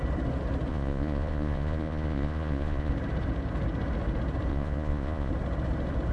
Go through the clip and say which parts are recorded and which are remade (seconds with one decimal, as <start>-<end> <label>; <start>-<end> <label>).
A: 0.0-0.7 recorded; 0.7-2.9 remade; 2.9-4.5 recorded; 4.5-5.3 remade; 5.3-6.1 recorded